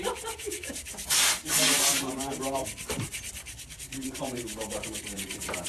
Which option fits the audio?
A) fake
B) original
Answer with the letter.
A